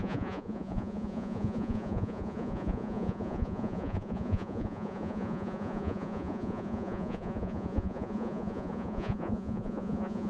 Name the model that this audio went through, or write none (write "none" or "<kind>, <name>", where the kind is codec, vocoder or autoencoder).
vocoder, Vocos